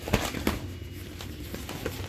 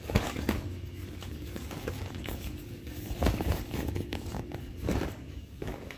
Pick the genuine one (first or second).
first